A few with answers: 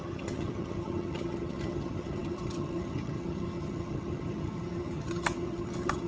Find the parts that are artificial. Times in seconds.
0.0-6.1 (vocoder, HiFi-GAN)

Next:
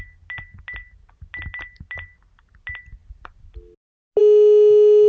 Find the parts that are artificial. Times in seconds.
none

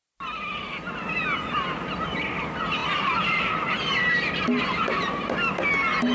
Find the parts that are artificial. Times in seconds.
none

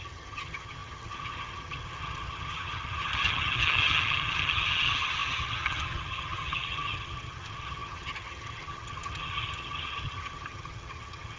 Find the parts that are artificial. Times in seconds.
0.0-11.4 (vocoder, HiFi-GAN)